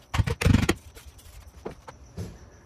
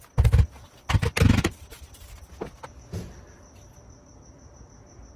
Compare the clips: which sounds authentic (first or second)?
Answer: second